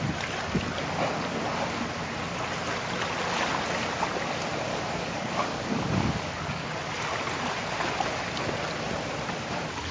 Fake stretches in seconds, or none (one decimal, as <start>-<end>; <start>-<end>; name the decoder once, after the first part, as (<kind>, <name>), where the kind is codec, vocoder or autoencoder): 4.7-6.7 (codec, DAC)